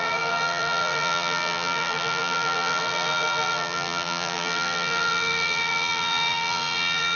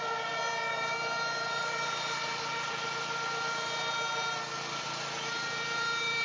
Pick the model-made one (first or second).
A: first